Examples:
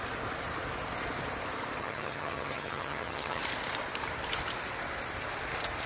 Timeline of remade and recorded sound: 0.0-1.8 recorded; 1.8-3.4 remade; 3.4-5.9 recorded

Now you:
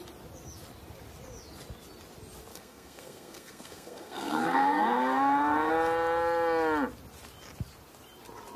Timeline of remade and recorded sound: 0.0-2.5 recorded; 2.5-5.7 remade; 5.7-8.6 recorded

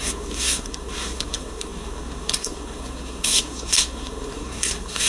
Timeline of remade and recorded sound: 0.0-5.1 remade

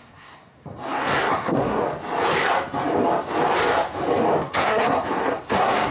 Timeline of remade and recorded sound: 0.0-1.8 remade; 1.8-4.5 recorded; 4.5-5.9 remade